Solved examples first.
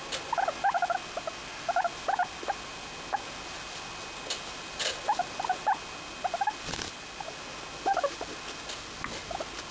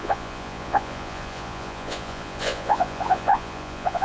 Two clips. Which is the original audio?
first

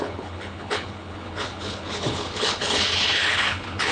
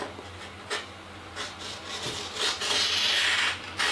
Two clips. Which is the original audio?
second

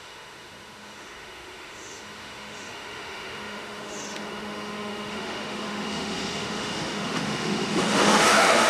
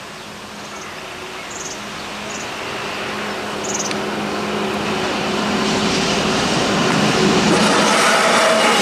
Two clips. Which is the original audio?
second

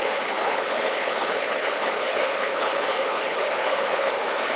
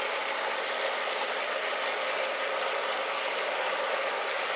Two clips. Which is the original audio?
second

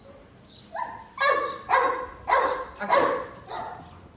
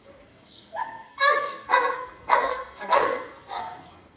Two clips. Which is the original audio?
first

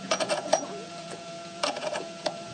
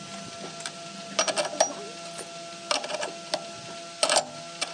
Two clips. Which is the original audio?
second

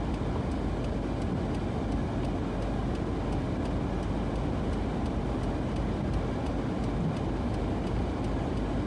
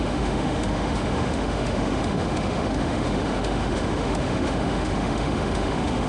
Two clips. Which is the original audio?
first